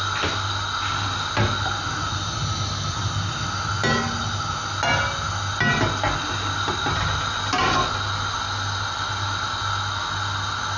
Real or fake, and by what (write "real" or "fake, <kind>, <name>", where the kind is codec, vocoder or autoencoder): real